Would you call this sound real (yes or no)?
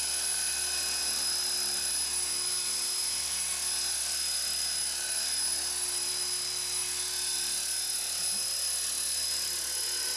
yes